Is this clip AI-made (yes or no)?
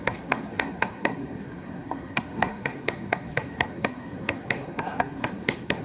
yes